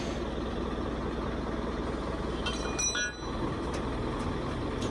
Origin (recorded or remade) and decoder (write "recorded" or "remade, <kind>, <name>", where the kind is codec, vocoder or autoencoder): recorded